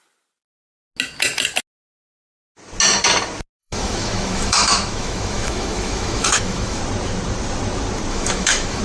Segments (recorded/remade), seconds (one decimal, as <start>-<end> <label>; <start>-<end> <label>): 0.0-3.6 recorded; 3.6-6.8 remade; 6.8-8.1 recorded; 8.1-8.8 remade